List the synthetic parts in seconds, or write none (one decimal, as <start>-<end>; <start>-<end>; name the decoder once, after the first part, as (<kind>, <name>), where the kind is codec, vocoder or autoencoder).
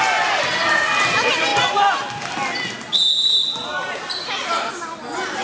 none